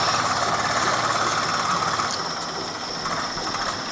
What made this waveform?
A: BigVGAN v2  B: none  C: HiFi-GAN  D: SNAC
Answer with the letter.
B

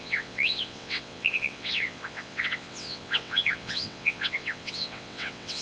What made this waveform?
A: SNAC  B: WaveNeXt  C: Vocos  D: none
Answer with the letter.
B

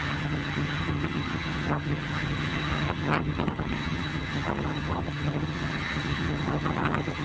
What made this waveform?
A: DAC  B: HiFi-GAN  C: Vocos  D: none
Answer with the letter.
B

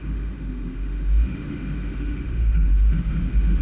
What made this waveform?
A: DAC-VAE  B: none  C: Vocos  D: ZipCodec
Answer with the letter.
A